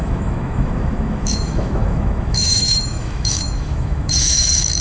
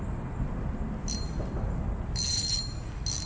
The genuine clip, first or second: second